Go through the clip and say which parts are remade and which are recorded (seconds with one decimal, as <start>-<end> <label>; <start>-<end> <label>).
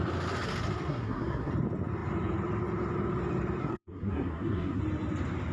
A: 0.0-0.9 recorded; 0.9-1.5 remade; 1.5-3.6 recorded; 3.6-4.8 remade; 4.8-5.5 recorded